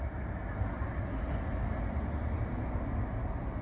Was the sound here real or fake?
real